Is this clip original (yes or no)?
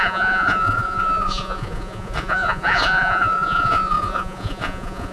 no